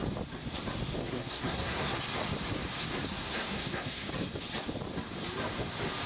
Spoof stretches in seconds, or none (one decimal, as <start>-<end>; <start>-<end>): 1.0-2.0; 3.2-4.1